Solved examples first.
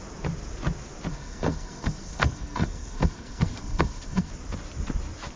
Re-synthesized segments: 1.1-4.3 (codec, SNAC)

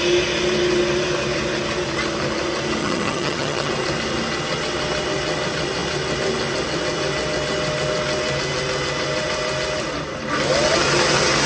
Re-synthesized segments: 2.8-3.7 (vocoder, HiFi-GAN)

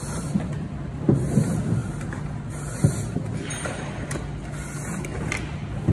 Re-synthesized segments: none

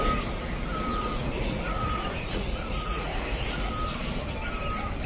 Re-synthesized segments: 0.9-3.7 (vocoder, Vocos)

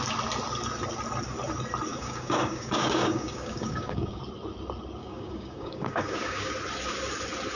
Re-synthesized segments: 1.9-4.2 (codec, DAC); 5.0-6.5

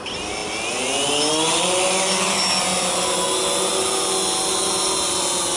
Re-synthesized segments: none

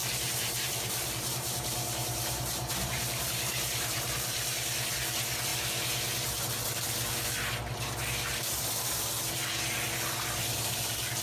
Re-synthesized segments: 0.0-4.9 (vocoder, BigVGAN v2)

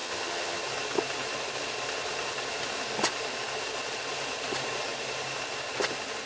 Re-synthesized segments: 0.0-0.6 (vocoder, HiFi-GAN)